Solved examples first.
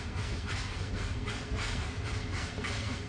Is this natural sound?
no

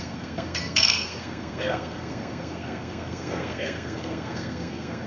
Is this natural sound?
no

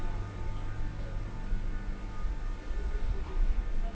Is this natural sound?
yes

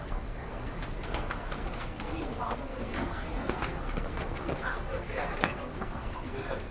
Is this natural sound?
no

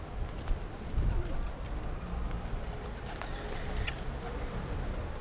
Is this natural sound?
yes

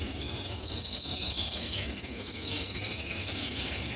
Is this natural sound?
no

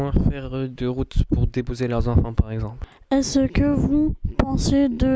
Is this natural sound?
yes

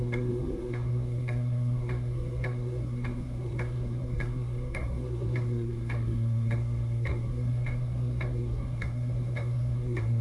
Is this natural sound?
no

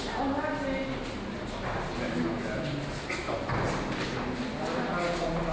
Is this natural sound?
yes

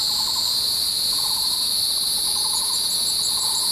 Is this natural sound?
yes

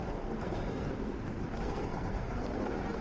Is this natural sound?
no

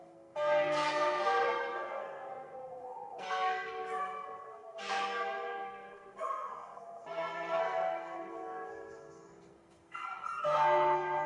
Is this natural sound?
no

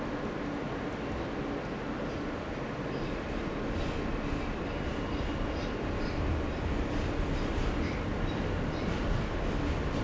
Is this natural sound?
yes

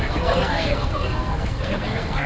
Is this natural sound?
no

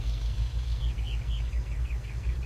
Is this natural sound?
no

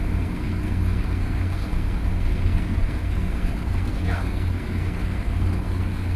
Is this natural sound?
no